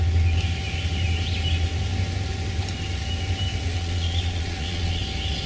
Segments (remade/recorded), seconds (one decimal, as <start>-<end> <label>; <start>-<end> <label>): 0.0-3.7 recorded; 3.7-5.0 remade; 5.0-5.5 recorded